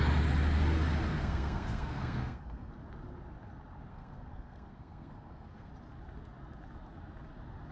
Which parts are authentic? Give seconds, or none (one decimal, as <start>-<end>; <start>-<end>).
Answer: 0.0-1.1; 2.7-3.9; 5.7-7.7